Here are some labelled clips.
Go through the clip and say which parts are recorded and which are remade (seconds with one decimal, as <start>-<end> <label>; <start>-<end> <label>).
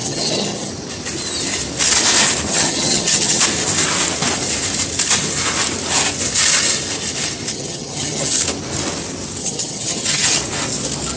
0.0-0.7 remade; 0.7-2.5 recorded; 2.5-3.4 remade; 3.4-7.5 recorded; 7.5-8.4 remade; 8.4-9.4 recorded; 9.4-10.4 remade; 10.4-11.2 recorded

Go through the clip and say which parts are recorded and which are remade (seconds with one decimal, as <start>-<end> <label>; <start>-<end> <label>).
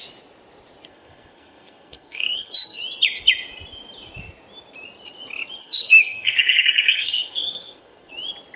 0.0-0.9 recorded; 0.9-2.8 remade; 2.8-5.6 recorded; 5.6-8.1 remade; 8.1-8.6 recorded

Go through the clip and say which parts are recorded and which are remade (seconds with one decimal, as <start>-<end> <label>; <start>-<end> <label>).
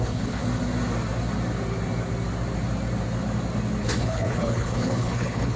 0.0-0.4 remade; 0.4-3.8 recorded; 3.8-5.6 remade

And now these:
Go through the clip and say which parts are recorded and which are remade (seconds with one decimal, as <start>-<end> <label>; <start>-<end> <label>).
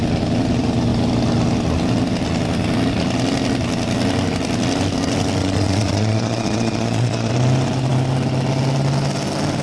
0.0-5.4 recorded; 5.4-7.3 remade; 7.3-9.6 recorded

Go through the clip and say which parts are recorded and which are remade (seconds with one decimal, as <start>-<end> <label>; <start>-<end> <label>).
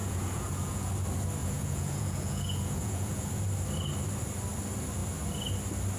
0.0-0.9 remade; 0.9-1.4 recorded; 1.4-3.4 remade; 3.4-6.0 recorded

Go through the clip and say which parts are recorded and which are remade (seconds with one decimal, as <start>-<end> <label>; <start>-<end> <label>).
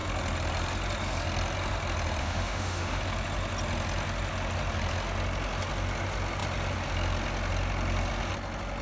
0.0-2.2 recorded; 2.2-3.0 remade; 3.0-8.8 recorded